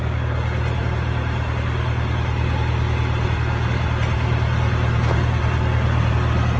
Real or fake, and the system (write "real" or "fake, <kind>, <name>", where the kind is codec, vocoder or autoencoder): real